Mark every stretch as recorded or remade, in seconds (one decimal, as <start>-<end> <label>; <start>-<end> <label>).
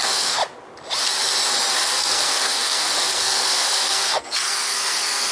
0.0-0.4 remade; 0.4-1.7 recorded; 1.7-5.3 remade